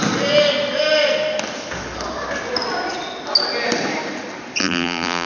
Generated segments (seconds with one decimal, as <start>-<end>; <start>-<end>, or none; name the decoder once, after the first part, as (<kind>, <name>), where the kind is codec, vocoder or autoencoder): 4.6-5.3 (vocoder, BigVGAN v2)